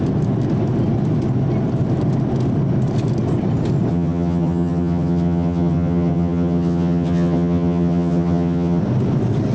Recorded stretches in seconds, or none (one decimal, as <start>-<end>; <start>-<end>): 0.0-3.9; 8.8-9.5